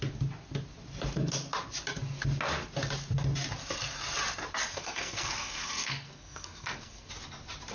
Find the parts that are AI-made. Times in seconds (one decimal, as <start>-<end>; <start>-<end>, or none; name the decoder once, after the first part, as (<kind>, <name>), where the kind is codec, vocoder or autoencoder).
4.7-7.1 (codec, SNAC)